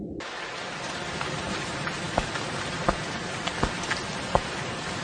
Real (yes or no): no